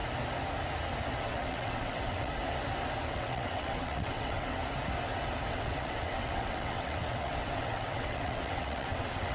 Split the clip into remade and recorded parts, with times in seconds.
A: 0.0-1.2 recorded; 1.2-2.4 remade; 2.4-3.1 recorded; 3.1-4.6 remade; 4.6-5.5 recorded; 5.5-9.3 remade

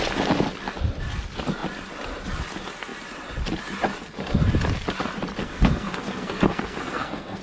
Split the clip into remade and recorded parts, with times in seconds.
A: 0.0-5.4 recorded; 5.4-7.4 remade

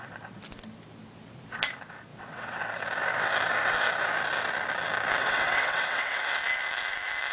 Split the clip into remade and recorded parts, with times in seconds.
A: 0.0-2.1 recorded; 2.1-2.6 remade; 2.6-5.2 recorded; 5.2-6.2 remade; 6.2-7.3 recorded

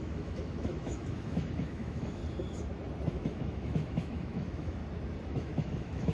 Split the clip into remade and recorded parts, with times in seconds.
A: 0.0-2.2 remade; 2.2-3.1 recorded; 3.1-4.8 remade; 4.8-5.3 recorded; 5.3-6.1 remade

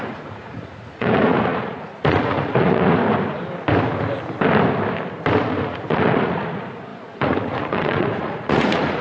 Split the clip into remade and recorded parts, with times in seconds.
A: 0.0-3.0 remade; 3.0-5.6 recorded; 5.6-9.0 remade